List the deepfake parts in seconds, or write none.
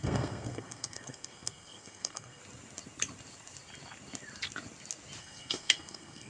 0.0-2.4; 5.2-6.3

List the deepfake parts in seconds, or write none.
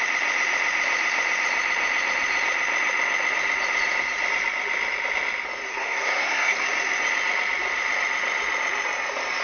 5.7-6.6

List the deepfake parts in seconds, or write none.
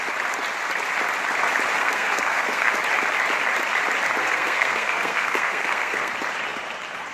1.8-2.7; 4.2-6.1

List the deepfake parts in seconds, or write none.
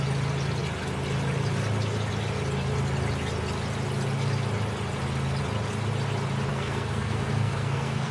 6.5-8.1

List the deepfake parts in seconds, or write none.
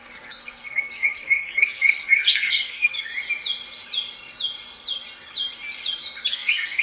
0.0-3.1; 6.3-6.8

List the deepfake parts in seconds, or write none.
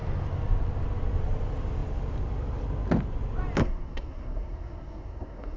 3.6-5.6